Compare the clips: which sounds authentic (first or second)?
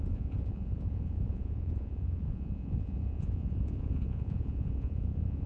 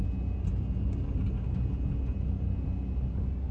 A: second